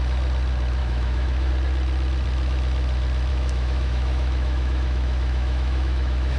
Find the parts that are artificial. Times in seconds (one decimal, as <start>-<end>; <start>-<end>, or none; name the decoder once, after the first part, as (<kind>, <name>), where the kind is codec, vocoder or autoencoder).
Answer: 0.8-1.5 (autoencoder, DAC-VAE); 3.3-6.4